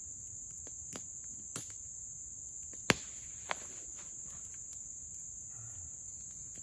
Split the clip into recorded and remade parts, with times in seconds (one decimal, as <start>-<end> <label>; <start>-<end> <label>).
0.0-6.6 recorded